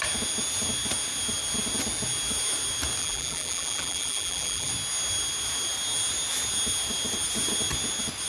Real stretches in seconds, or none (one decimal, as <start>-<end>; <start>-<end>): 0.0-3.0; 4.7-8.3